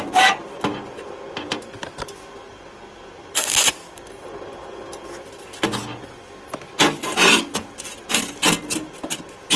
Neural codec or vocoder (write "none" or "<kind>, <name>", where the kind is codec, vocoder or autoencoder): none